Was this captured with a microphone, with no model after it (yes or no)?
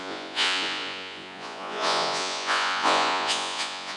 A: no